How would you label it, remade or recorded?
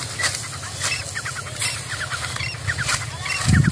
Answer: recorded